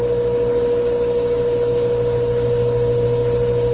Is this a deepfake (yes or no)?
no